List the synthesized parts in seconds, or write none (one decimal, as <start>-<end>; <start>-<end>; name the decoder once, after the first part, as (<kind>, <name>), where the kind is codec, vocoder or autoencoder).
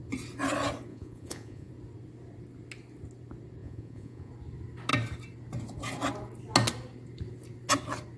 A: 0.9-1.7 (vocoder, Vocos); 3.6-4.3